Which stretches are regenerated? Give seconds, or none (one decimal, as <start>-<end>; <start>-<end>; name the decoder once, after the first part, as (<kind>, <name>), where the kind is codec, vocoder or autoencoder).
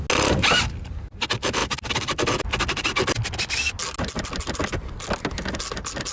none